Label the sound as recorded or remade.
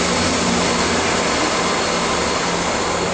recorded